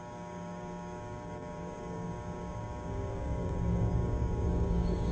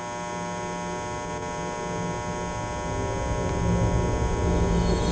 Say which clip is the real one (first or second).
second